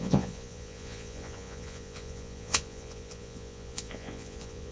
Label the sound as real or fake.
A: fake